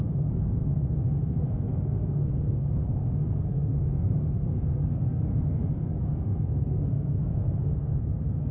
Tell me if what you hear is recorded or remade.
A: remade